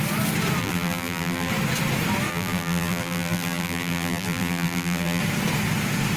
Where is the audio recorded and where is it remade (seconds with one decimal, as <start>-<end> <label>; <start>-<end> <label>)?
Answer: 0.0-0.6 recorded; 0.6-1.5 remade; 1.5-2.3 recorded; 2.3-5.2 remade; 5.2-6.2 recorded